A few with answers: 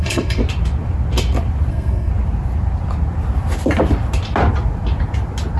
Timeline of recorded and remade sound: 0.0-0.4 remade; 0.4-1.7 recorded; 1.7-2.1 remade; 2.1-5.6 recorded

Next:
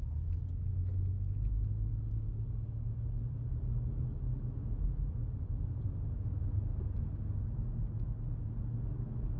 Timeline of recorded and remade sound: 0.0-0.8 recorded; 0.8-1.9 remade; 1.9-9.4 recorded

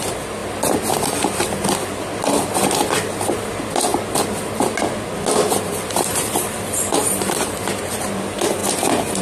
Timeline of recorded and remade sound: 0.0-0.4 remade; 0.4-3.4 recorded; 3.4-3.9 remade; 3.9-5.7 recorded; 5.7-8.6 remade; 8.6-9.2 recorded

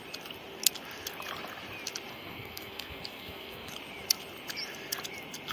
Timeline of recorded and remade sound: 0.0-2.1 recorded; 2.1-3.7 remade; 3.7-5.5 recorded

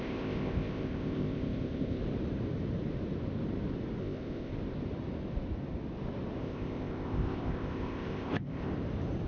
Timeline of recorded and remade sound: 0.0-2.0 remade; 2.0-4.0 recorded; 4.0-4.5 remade; 4.5-6.4 recorded; 6.4-8.7 remade; 8.7-9.3 recorded